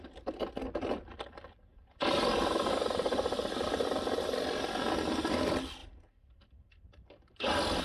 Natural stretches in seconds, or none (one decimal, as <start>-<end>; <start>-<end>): 0.0-1.7; 4.9-5.8